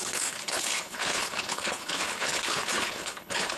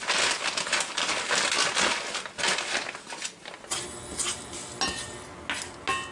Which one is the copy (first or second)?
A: first